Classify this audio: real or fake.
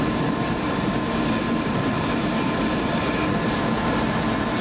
fake